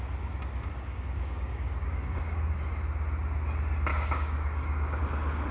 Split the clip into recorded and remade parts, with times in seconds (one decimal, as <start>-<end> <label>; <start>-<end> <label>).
0.0-0.7 recorded; 0.7-2.6 remade; 2.6-3.9 recorded; 3.9-5.0 remade; 5.0-5.5 recorded